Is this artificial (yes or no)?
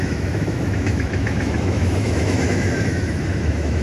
yes